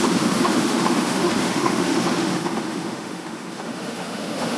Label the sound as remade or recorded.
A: remade